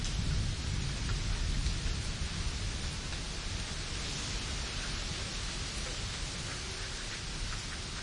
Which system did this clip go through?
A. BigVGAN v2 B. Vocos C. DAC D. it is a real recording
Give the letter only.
D